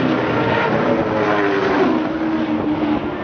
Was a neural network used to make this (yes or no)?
no